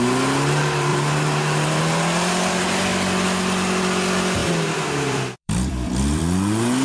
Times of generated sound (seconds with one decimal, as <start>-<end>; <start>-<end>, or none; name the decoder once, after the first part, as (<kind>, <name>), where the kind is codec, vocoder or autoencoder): 0.9-1.8 (vocoder, BigVGAN v2); 4.4-6.2